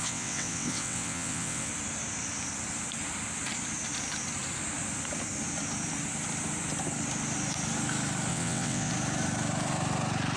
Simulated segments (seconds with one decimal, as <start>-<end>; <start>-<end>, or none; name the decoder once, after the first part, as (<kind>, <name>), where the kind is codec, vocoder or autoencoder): 0.0-1.7 (vocoder, WaveNeXt); 8.3-8.9